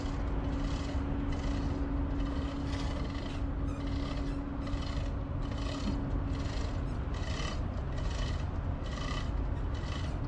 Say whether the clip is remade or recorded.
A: recorded